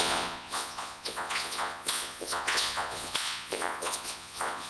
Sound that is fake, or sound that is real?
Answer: fake